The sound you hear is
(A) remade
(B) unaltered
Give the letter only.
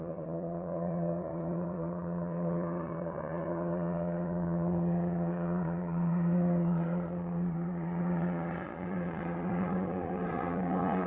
A